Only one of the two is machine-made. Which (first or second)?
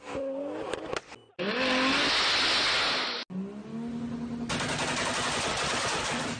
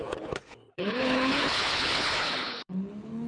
second